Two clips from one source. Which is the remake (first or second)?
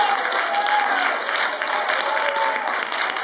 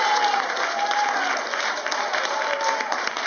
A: second